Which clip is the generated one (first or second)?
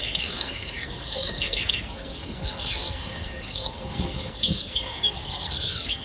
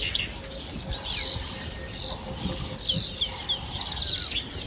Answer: first